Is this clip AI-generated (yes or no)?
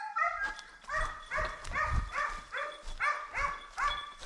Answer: no